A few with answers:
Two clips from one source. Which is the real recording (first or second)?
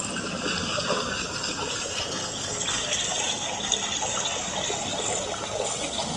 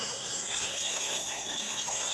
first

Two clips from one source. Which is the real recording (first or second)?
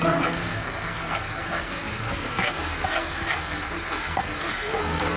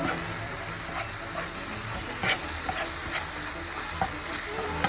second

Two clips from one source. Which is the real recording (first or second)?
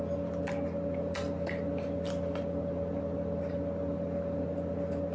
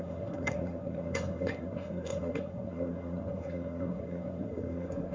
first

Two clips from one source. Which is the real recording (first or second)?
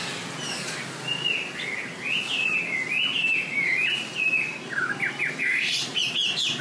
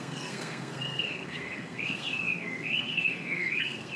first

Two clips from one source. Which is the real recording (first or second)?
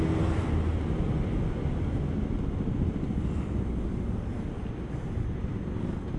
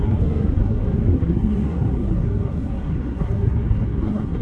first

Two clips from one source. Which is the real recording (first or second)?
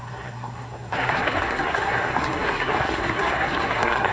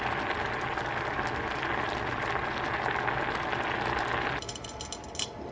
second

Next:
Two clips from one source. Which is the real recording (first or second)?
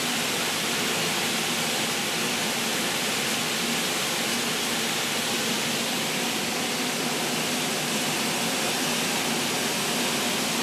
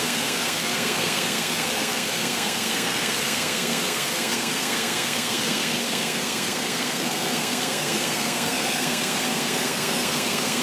first